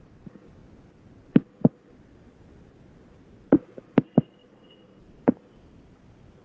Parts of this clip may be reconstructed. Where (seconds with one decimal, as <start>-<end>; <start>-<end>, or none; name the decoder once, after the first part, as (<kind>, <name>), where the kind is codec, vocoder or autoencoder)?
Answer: 4.4-5.4 (vocoder, BigVGAN v2)

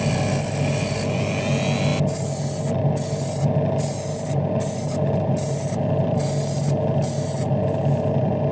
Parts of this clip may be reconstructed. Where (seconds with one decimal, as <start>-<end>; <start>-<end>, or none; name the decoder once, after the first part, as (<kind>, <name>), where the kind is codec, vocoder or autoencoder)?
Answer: none

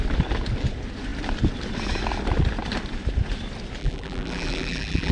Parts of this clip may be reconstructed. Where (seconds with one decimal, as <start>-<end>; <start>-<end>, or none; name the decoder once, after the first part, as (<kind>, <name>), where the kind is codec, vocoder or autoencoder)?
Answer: 3.8-5.1 (vocoder, BigVGAN v2)

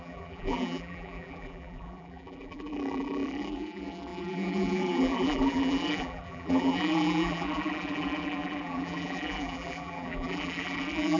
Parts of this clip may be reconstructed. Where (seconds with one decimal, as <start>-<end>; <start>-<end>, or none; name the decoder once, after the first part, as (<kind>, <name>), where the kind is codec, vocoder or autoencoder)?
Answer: 0.0-11.2 (vocoder, BigVGAN v2)

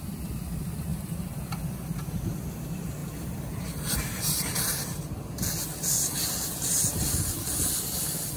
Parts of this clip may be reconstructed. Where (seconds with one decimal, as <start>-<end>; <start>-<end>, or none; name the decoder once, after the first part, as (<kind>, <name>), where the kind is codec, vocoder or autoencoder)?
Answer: none

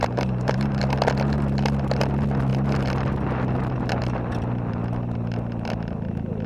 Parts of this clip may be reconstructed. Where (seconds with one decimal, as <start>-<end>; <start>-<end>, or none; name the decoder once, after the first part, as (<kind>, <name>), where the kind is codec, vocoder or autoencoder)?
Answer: 0.0-0.8 (vocoder, BigVGAN v2)

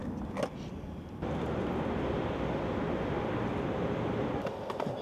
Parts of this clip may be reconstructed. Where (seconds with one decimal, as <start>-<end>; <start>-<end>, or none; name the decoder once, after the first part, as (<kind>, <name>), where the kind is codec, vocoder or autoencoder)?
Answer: 3.0-5.0 (vocoder, BigVGAN v2)

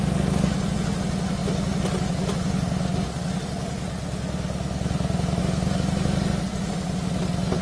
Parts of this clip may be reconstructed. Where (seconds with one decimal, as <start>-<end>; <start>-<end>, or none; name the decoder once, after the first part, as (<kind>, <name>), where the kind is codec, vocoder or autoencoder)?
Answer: none